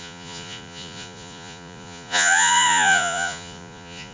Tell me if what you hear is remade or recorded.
remade